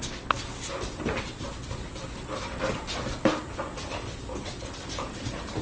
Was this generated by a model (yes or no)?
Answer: no